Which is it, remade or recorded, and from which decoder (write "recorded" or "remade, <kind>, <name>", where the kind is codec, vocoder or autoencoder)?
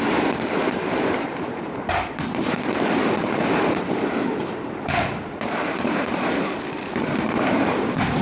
remade, vocoder, BigVGAN v2